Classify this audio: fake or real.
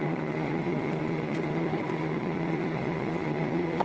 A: fake